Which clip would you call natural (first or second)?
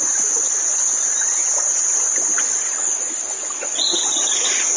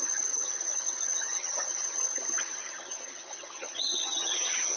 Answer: first